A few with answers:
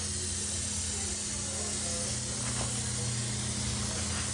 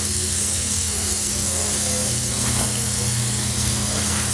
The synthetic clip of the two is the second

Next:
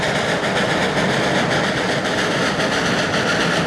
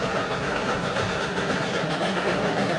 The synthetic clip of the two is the second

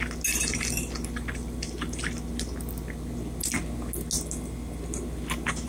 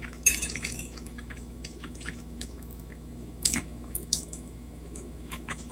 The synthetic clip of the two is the second